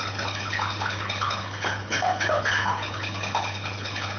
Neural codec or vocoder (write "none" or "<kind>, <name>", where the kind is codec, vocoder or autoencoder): codec, HILCodec